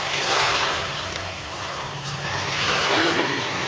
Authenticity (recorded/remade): remade